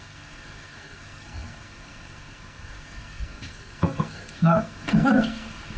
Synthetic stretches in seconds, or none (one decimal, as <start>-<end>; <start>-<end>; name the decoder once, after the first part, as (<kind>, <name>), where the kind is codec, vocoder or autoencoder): 0.0-5.8 (codec, SNAC)